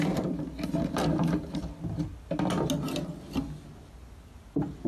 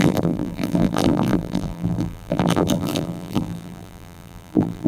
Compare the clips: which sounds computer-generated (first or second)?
second